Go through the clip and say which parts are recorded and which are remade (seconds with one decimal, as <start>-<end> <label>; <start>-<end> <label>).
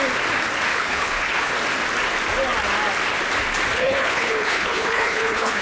0.0-0.7 recorded; 0.7-1.5 remade; 1.5-3.7 recorded; 3.7-5.6 remade